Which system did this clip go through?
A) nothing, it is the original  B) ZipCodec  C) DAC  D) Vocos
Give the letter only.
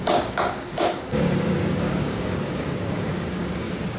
C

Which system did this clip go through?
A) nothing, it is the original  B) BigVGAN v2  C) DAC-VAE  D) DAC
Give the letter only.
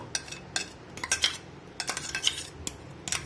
A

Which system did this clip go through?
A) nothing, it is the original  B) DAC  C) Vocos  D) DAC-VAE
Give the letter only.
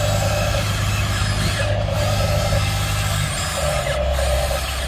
A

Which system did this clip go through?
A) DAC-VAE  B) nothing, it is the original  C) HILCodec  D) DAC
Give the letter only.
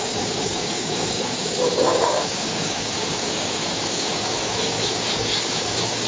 D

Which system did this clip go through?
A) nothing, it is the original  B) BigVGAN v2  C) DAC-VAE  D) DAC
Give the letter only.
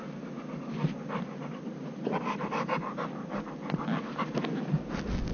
A